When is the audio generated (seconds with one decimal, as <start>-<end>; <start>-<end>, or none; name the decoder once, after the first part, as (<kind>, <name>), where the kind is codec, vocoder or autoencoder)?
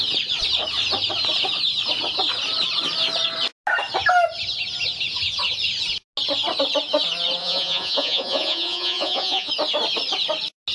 7.4-9.5 (vocoder, Vocos)